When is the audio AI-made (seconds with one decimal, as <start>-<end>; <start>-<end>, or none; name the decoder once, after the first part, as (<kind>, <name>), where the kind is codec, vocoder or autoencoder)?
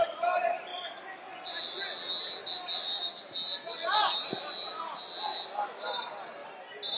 none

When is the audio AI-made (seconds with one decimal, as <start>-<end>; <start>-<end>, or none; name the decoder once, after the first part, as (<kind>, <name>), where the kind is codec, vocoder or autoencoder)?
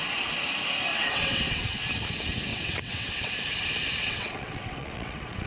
0.9-1.8 (vocoder, WaveNeXt); 2.5-3.3; 4.0-5.5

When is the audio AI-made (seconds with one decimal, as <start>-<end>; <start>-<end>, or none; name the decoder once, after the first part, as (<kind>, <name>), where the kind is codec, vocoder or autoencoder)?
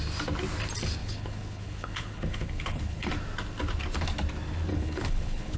1.0-3.1 (codec, HILCodec); 4.7-5.6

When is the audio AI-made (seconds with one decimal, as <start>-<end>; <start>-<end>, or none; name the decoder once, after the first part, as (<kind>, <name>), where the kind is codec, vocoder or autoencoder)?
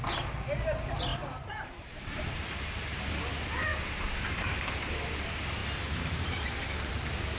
1.1-3.0 (vocoder, BigVGAN v2); 3.7-4.6; 5.6-6.9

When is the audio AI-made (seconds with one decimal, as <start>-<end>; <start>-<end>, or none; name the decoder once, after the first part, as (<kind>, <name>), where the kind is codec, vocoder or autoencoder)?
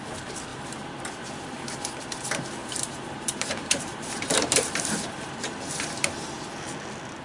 0.5-1.0 (vocoder, BigVGAN v2); 2.6-5.1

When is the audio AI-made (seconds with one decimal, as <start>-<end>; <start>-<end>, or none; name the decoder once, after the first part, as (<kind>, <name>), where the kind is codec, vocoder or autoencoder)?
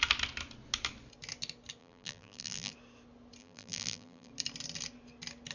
1.8-2.7 (vocoder, BigVGAN v2); 3.4-4.3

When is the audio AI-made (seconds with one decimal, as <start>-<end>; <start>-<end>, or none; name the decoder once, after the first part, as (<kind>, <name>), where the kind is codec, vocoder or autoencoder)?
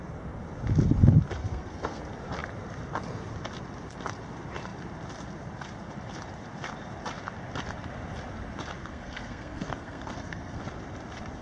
1.4-2.0 (codec, SNAC); 8.8-10.6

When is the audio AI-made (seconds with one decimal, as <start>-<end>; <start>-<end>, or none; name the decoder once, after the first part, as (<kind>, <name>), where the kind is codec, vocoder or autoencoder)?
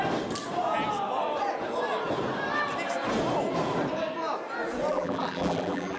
4.9-6.0 (vocoder, BigVGAN v2)